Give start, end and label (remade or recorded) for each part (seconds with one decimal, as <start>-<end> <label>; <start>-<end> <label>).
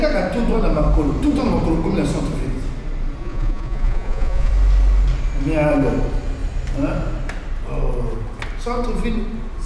0.0-3.2 recorded; 3.2-4.5 remade; 4.5-9.7 recorded